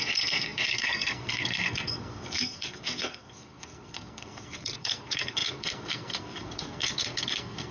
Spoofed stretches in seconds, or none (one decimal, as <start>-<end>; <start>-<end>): 0.0-7.7